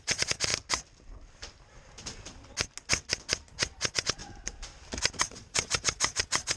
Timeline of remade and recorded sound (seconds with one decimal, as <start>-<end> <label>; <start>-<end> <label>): 0.0-0.5 remade; 0.5-3.5 recorded; 3.5-4.2 remade; 4.2-5.2 recorded; 5.2-6.6 remade